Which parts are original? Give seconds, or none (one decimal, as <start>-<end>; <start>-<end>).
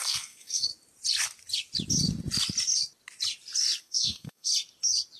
0.7-3.8; 4.5-5.2